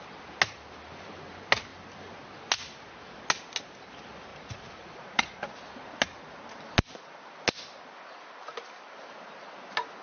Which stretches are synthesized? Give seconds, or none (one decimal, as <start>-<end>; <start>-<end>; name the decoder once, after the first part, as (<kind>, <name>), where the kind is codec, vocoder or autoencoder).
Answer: 4.3-5.5 (vocoder, Vocos)